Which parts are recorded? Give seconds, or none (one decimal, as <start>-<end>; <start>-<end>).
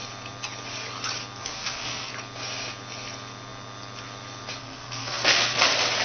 0.0-1.4; 2.1-4.6; 5.6-6.0